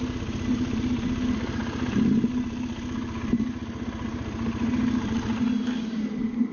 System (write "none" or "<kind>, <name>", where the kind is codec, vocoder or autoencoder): none